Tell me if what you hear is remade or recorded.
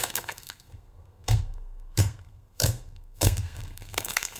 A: remade